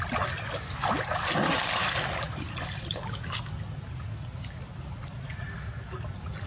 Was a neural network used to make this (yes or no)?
no